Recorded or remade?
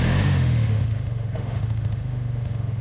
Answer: remade